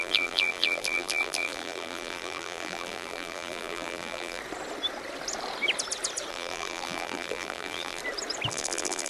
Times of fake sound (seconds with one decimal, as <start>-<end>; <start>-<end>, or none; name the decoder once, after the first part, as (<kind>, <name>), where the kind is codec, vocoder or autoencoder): 0.0-4.4 (vocoder, BigVGAN v2); 6.3-8.0; 8.5-9.1